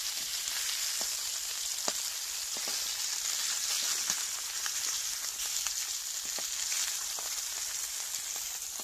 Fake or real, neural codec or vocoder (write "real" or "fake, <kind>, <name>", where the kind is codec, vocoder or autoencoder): real